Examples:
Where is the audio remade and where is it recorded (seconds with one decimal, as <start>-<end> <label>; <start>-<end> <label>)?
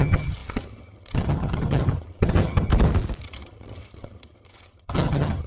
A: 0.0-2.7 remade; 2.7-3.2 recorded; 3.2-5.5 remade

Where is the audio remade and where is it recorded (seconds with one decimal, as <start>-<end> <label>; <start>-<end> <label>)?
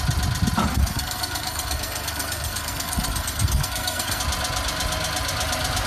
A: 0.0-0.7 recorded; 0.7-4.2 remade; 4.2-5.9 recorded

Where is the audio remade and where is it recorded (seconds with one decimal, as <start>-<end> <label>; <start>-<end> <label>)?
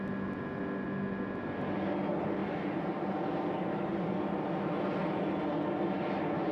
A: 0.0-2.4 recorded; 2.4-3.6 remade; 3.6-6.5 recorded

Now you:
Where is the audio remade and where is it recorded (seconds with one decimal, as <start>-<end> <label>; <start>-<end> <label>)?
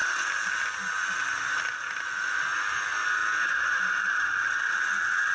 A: 0.0-5.3 recorded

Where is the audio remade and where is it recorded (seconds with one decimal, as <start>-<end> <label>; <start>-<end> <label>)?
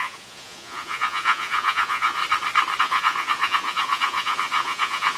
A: 0.0-2.2 remade; 2.2-2.8 recorded; 2.8-5.2 remade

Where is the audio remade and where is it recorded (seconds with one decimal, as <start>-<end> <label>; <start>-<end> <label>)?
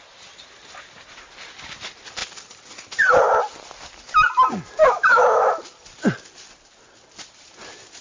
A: 0.0-4.8 recorded; 4.8-5.5 remade; 5.5-8.0 recorded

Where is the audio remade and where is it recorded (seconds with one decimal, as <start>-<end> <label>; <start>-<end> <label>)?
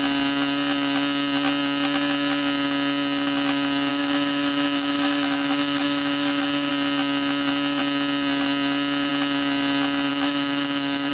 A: 0.0-3.9 recorded; 3.9-6.7 remade; 6.7-10.1 recorded; 10.1-11.1 remade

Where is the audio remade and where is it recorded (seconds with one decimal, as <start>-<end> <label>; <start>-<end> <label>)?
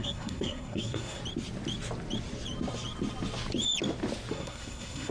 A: 0.0-1.2 remade; 1.2-4.3 recorded; 4.3-5.1 remade